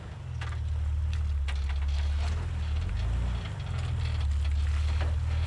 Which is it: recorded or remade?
recorded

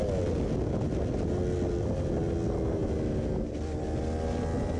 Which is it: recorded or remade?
recorded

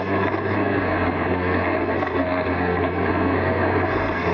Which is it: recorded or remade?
remade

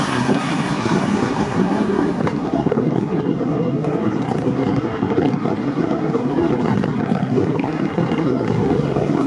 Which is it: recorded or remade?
remade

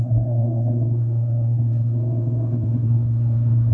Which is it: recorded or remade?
remade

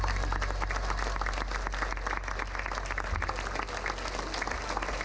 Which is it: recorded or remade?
recorded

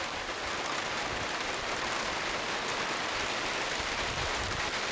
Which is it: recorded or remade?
recorded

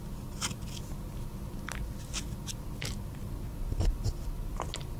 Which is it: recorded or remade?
recorded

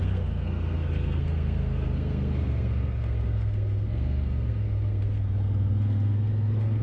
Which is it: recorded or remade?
remade